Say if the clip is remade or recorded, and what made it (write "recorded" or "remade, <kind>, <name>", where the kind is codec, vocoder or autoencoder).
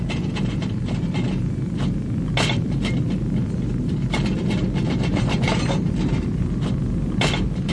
recorded